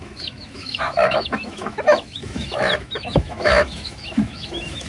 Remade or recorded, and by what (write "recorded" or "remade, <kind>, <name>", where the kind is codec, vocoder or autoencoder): remade, autoencoder, DAC-VAE